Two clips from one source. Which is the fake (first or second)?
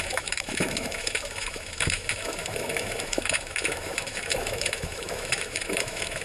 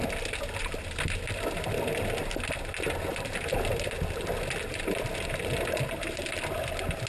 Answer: first